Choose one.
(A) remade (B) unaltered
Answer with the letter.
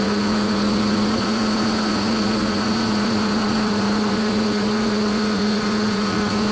A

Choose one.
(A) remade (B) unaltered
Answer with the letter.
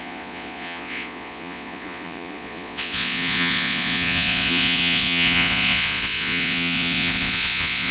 A